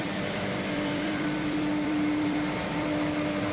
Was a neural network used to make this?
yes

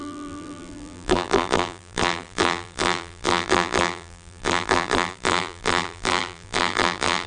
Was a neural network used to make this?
yes